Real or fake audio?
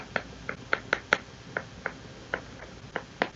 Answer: real